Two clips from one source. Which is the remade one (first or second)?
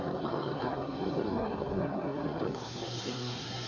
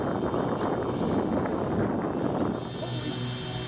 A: first